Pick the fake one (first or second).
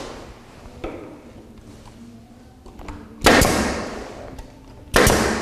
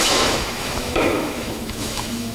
second